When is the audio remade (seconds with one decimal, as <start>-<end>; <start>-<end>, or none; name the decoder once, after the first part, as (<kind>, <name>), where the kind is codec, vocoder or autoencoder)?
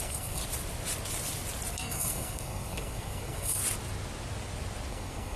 0.0-0.4 (codec, SNAC); 1.7-3.6; 4.9-5.4